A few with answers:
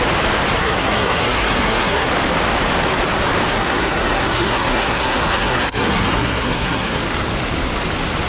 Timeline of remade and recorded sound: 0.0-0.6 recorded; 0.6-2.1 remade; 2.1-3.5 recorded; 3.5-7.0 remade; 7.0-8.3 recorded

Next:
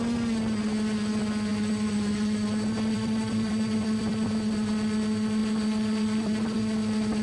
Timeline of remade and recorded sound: 0.0-1.5 recorded; 1.5-4.3 remade; 4.3-5.4 recorded; 5.4-6.6 remade; 6.6-7.2 recorded

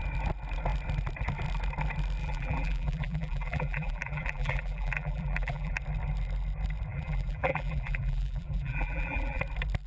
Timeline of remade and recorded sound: 0.0-2.2 recorded; 2.2-5.8 remade; 5.8-6.9 recorded; 6.9-9.4 remade; 9.4-9.9 recorded

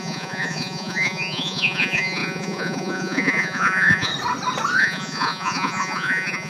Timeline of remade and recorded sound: 0.0-4.1 remade; 4.1-4.8 recorded; 4.8-6.5 remade

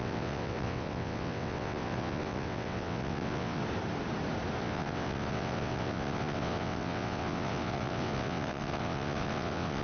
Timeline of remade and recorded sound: 0.0-3.6 remade; 3.6-4.6 recorded; 4.6-9.8 remade

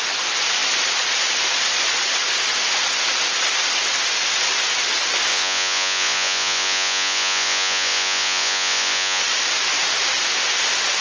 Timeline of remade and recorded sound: 0.0-5.3 recorded; 5.3-9.2 remade; 9.2-11.0 recorded

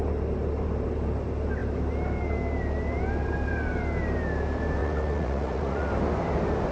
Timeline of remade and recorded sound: 0.0-4.8 recorded; 4.8-5.9 remade; 5.9-6.7 recorded

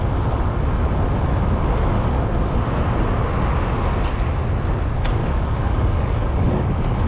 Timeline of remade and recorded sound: 0.0-5.2 recorded; 5.2-7.1 remade